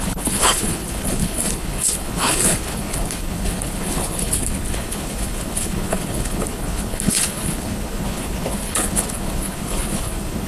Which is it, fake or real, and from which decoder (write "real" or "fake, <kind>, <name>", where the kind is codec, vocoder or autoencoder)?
fake, codec, HILCodec